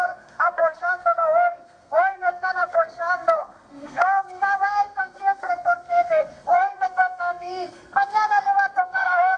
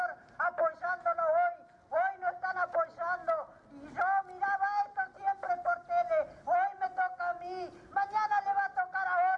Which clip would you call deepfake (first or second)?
first